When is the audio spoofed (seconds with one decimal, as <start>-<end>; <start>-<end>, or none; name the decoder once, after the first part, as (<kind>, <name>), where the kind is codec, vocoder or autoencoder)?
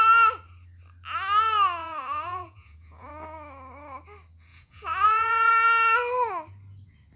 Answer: 1.8-3.1 (vocoder, Vocos); 4.5-5.5